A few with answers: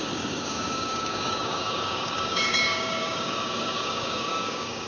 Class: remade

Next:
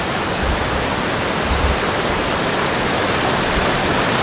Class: recorded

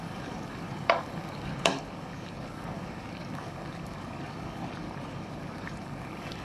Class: remade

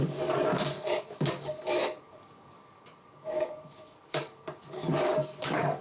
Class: remade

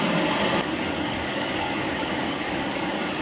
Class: remade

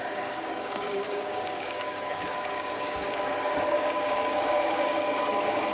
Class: remade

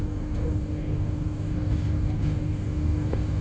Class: remade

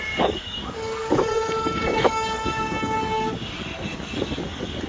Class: remade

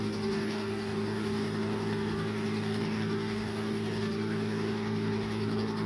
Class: remade